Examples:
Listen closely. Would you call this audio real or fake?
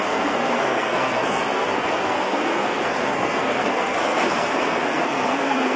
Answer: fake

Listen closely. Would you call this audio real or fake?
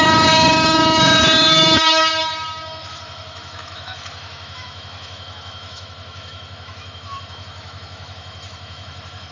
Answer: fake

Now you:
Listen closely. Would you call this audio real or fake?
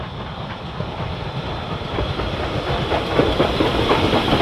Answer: real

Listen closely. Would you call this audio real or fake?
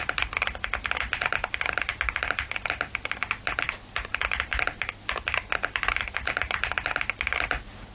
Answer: real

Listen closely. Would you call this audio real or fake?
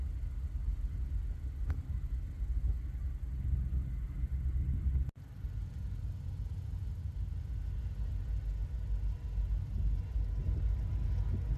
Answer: real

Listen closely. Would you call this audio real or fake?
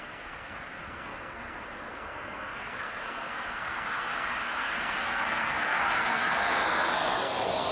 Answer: fake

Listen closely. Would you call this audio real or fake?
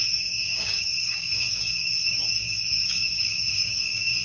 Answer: fake